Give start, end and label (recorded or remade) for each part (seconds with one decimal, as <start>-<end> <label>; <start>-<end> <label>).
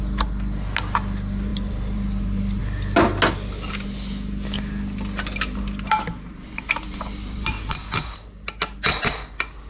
0.0-1.5 recorded; 1.5-2.6 remade; 2.6-6.3 recorded; 6.3-7.6 remade; 7.6-9.7 recorded